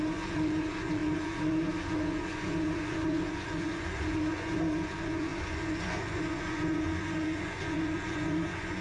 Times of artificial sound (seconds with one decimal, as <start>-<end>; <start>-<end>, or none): 0.0-8.8